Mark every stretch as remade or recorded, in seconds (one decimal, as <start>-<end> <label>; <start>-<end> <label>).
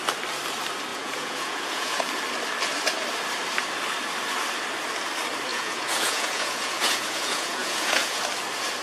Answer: 0.0-0.9 recorded; 0.9-2.0 remade; 2.0-5.5 recorded; 5.5-8.2 remade; 8.2-8.8 recorded